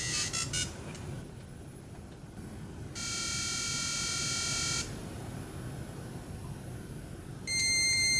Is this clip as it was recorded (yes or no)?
yes